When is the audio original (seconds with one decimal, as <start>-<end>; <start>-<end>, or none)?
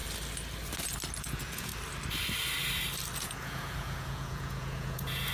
0.0-1.2; 1.7-3.2